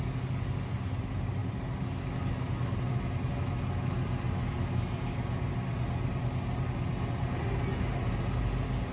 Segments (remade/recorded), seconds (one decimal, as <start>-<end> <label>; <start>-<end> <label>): 0.0-8.9 recorded